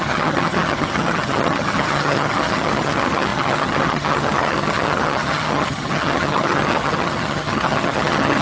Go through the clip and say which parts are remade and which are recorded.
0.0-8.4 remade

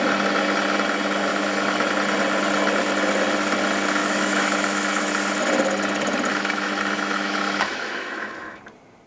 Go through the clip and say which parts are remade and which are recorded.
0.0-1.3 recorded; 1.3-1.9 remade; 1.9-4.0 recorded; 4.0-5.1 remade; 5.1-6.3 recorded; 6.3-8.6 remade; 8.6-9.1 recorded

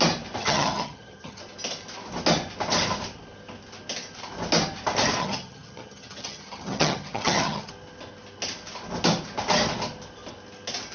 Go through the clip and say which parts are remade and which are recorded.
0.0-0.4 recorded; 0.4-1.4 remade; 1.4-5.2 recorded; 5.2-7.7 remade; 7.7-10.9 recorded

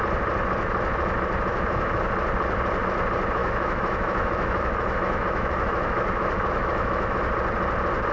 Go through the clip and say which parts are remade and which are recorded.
0.0-1.5 recorded; 1.5-2.0 remade; 2.0-3.4 recorded; 3.4-7.2 remade; 7.2-8.1 recorded

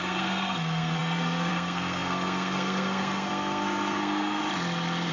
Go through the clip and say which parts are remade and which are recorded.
0.0-4.4 remade; 4.4-5.1 recorded